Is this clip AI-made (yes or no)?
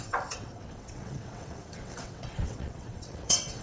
yes